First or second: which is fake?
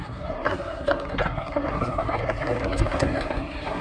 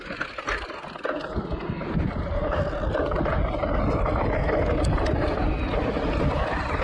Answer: first